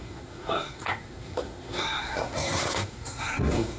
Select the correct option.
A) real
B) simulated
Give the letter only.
B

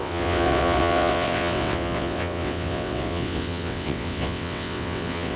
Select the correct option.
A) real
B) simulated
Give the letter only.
B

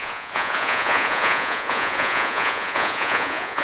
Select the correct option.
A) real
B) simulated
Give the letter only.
B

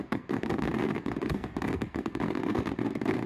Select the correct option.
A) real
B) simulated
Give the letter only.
B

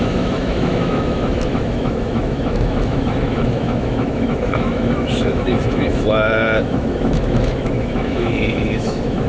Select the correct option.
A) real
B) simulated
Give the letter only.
B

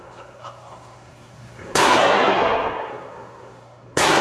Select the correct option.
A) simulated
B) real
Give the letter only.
A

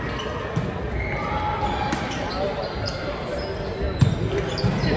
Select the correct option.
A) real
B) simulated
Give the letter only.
A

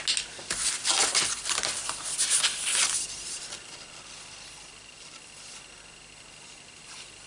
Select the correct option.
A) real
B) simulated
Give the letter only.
A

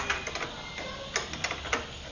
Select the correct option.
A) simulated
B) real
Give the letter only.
B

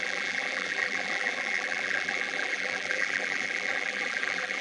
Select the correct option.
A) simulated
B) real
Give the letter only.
A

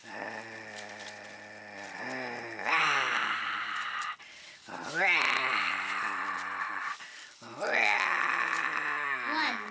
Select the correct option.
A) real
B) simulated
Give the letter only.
A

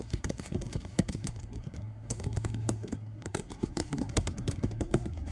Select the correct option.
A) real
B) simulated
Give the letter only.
B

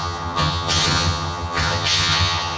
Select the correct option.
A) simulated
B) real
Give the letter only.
A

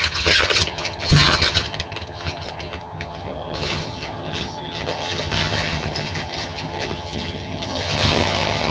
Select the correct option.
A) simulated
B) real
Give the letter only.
A